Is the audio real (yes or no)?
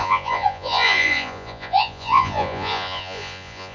no